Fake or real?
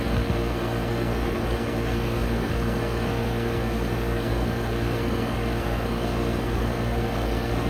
fake